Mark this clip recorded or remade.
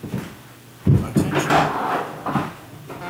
recorded